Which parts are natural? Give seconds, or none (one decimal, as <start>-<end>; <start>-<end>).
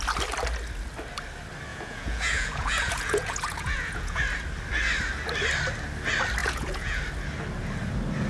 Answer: 0.0-1.7; 4.2-6.4; 7.0-8.3